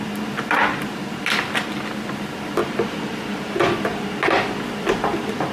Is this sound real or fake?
real